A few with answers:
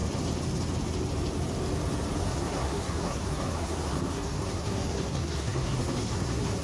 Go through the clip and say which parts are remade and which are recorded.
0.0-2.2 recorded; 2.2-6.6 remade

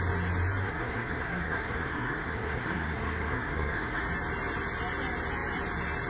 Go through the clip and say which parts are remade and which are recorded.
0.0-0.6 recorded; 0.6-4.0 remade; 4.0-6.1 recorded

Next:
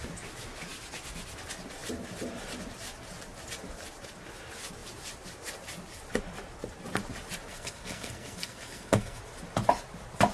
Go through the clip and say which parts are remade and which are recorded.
0.0-7.5 recorded; 7.5-9.2 remade; 9.2-10.3 recorded